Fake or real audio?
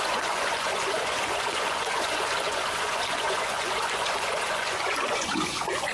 fake